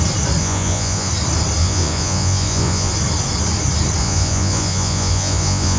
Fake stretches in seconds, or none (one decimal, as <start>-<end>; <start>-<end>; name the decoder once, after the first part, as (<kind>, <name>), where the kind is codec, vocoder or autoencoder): 0.4-1.1 (vocoder, Vocos); 1.6-2.9; 4.0-5.8